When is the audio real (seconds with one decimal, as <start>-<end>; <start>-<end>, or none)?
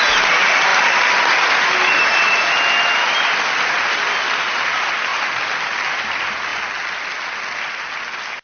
0.0-8.4